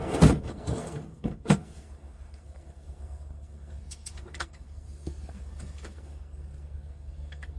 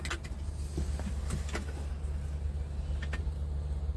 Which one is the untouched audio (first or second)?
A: second